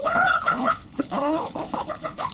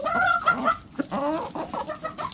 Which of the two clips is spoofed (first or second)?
first